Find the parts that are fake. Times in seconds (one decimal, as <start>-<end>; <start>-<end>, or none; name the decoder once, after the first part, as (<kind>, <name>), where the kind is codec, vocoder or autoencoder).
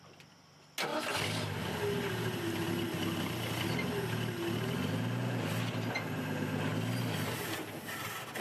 none